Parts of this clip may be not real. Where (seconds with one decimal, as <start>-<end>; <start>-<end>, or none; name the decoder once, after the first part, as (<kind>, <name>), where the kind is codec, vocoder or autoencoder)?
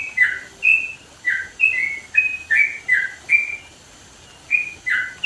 none